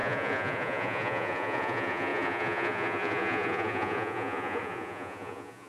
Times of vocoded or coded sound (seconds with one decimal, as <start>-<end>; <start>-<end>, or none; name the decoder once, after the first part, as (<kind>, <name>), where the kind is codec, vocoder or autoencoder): 0.0-5.7 (vocoder, Vocos)